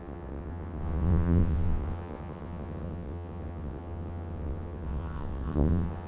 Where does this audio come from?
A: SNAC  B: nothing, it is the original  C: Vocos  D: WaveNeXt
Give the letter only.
D